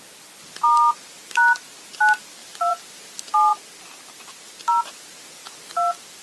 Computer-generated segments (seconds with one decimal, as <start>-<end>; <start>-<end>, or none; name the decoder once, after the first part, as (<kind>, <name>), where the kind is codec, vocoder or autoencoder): 2.4-3.1 (vocoder, BigVGAN v2)